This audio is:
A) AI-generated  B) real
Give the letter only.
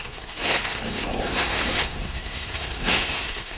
A